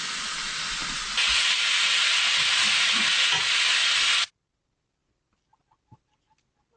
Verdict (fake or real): real